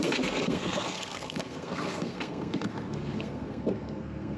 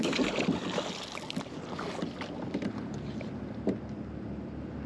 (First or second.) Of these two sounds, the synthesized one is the first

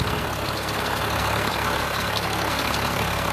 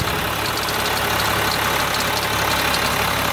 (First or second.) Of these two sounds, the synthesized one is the first